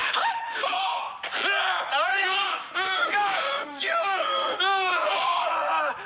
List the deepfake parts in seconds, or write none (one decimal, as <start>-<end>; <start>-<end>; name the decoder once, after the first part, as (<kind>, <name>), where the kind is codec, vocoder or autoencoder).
0.0-1.0 (autoencoder, DAC-VAE); 2.1-5.5